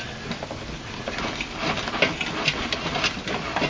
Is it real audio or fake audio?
real